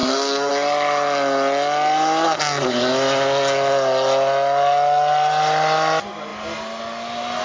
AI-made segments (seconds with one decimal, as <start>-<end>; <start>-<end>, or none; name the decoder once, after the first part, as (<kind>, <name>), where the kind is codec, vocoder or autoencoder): 0.0-0.5 (codec, SNAC)

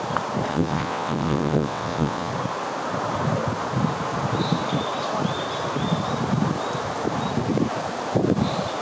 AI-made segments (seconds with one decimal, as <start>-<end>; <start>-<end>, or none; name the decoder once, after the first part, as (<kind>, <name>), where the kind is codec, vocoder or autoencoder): 0.5-2.3 (vocoder, WaveNeXt)

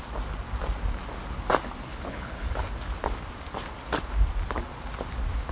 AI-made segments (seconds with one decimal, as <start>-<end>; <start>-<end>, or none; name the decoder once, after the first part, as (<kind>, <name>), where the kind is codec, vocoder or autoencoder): 1.9-2.5 (codec, HILCodec)

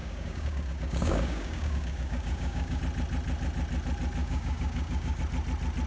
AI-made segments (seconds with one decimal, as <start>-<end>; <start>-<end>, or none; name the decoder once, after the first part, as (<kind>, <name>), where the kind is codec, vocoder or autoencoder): 0.0-2.8 (codec, DAC); 4.2-5.2

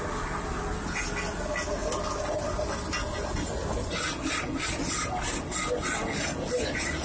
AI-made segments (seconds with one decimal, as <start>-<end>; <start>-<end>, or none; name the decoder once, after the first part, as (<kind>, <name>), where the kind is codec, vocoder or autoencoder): none

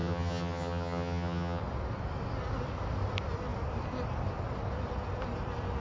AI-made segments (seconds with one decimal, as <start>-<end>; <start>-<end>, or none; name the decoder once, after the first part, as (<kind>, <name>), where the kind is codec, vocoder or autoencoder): 0.0-1.6 (vocoder, HiFi-GAN)

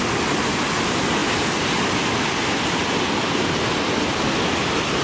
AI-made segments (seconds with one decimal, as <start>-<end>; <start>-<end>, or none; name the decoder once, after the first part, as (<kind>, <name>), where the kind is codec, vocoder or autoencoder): none

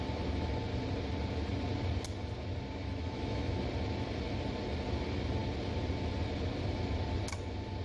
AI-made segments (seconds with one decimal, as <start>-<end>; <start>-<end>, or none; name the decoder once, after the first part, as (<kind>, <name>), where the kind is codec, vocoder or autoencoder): 2.8-3.6 (autoencoder, DAC-VAE)